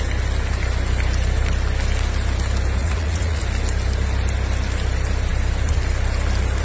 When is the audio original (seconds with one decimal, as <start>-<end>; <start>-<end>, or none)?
0.0-2.8; 3.4-6.6